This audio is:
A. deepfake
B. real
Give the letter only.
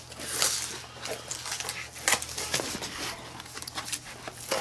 B